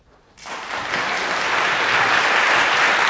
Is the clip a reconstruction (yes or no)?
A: no